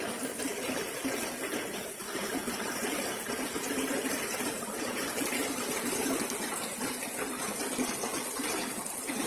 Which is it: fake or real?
fake